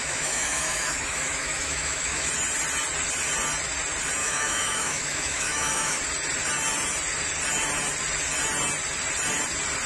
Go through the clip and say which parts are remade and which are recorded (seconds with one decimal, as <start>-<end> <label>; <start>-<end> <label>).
0.0-2.3 remade; 2.3-4.2 recorded; 4.2-6.0 remade; 6.0-9.9 recorded